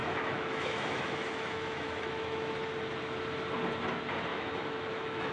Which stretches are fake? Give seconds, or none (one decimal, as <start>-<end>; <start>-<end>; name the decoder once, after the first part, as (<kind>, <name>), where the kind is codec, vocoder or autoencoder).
0.0-2.5 (autoencoder, DAC-VAE); 4.3-5.3